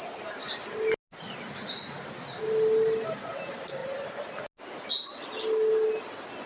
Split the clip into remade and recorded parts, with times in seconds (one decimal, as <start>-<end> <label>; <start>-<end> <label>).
0.0-6.5 recorded